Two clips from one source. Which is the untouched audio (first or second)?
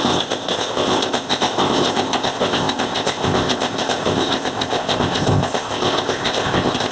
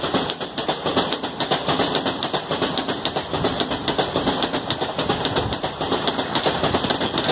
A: second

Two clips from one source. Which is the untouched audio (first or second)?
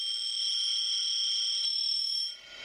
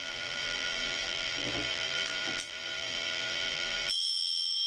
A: first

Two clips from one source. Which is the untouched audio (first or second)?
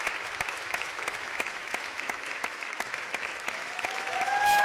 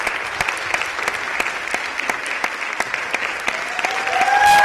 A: second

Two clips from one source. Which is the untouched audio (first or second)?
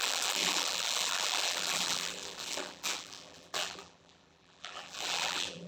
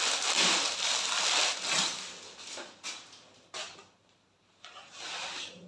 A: second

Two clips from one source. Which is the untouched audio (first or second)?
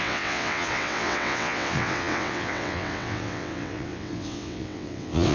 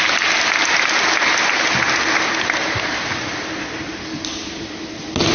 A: second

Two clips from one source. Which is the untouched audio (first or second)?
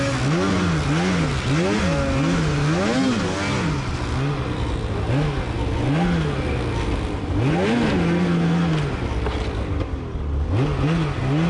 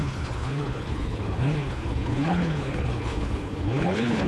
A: first